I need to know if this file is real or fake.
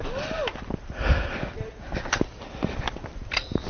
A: real